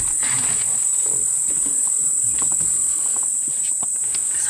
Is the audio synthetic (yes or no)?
no